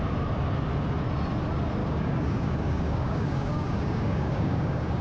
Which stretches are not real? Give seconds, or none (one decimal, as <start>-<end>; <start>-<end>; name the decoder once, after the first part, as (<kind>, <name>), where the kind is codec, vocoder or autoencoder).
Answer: 1.8-5.0 (codec, DAC)